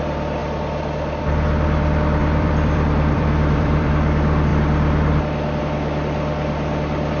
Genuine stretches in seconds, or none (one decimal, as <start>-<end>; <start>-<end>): 0.0-2.2; 3.9-7.2